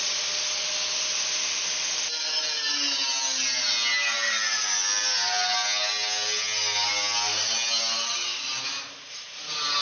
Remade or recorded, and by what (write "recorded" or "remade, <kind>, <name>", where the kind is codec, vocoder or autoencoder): recorded